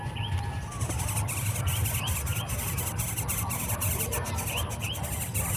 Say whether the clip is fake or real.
real